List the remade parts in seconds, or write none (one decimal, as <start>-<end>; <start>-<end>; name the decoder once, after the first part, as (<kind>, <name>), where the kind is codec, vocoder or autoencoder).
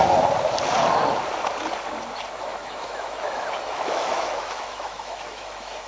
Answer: 2.5-5.9 (autoencoder, DAC-VAE)